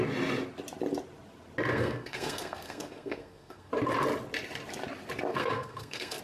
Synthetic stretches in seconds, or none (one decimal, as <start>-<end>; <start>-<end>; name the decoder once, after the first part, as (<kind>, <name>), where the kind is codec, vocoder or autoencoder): 1.7-3.7 (codec, SNAC); 5.3-6.2